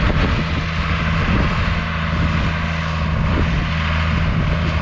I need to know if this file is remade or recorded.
recorded